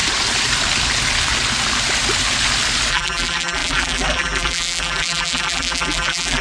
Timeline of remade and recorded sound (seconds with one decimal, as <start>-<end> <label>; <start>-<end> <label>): 0.0-2.9 recorded; 2.9-6.4 remade